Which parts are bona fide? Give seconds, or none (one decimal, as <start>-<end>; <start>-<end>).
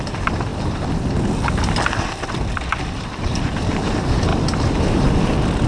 0.0-0.5; 3.9-4.3; 4.9-5.7